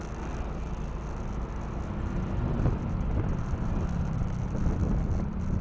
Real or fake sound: real